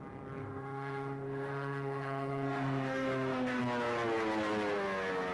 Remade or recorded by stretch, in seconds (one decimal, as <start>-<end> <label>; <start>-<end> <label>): 0.0-0.4 recorded; 0.4-3.6 remade; 3.6-5.3 recorded